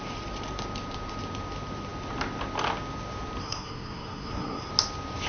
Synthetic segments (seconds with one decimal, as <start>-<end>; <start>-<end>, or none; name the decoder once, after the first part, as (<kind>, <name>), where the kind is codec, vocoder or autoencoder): 3.4-4.7 (codec, SNAC)